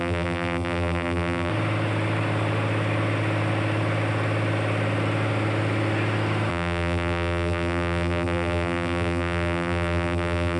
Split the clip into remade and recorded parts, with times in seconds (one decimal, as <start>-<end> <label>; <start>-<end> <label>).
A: 0.0-1.5 remade; 1.5-6.5 recorded; 6.5-10.6 remade